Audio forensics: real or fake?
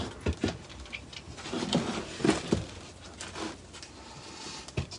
real